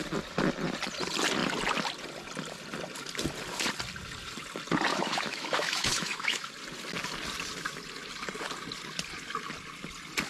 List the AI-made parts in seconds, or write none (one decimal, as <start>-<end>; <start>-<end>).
4.9-6.5